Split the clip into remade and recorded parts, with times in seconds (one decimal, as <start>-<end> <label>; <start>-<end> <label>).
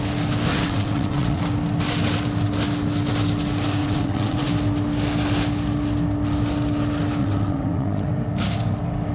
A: 0.0-0.5 recorded; 0.5-1.4 remade; 1.4-3.8 recorded; 3.8-4.5 remade; 4.5-7.2 recorded; 7.2-8.1 remade; 8.1-9.1 recorded